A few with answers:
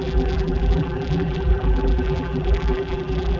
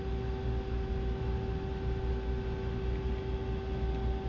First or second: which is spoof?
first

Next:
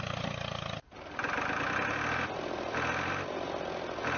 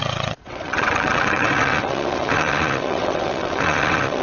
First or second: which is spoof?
second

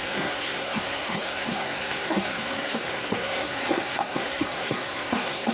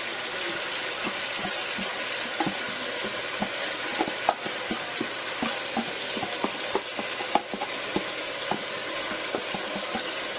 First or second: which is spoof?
first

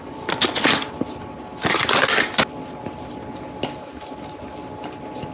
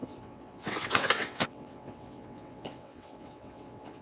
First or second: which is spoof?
second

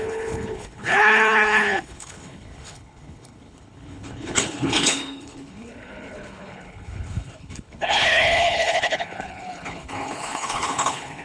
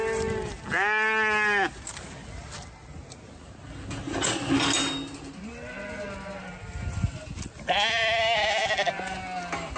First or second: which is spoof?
first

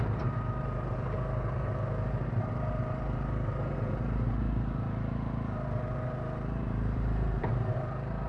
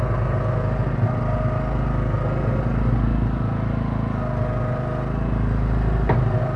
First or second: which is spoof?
first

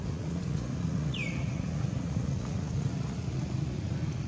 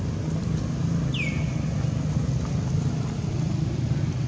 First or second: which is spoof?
first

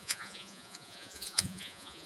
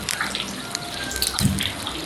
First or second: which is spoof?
first